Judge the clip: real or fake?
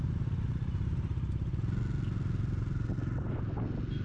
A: real